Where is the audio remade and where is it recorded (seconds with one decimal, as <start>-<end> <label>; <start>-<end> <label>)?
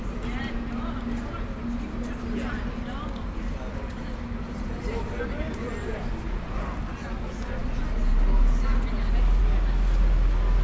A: 0.0-10.6 recorded